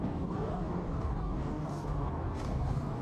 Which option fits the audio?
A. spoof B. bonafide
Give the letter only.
A